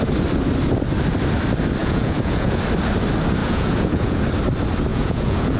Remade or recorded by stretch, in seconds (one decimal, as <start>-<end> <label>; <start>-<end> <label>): 0.0-1.8 recorded; 1.8-2.6 remade; 2.6-3.4 recorded; 3.4-4.2 remade; 4.2-4.9 recorded; 4.9-5.6 remade